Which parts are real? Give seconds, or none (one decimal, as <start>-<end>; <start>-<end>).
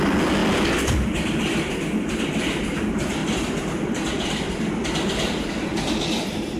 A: 0.0-3.2; 4.7-6.6